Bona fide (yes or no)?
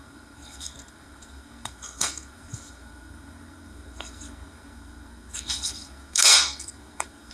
no